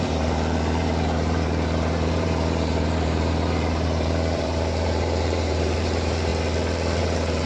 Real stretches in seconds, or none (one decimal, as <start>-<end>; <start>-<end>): 6.3-7.0